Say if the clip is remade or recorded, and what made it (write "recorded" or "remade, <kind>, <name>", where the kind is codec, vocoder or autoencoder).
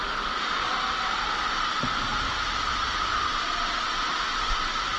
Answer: recorded